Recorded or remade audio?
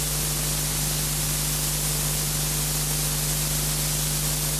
recorded